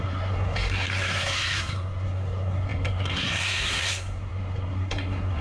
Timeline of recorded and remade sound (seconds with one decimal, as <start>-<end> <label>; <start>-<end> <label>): 0.0-5.4 remade